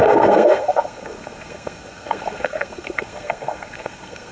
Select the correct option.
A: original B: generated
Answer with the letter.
B